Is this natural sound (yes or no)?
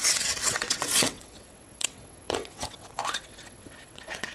no